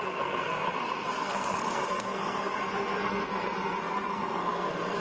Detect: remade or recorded remade